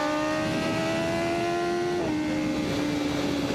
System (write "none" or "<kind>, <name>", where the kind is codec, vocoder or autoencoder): none